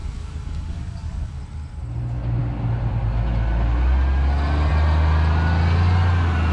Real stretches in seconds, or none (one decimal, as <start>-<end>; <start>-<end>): 1.4-6.5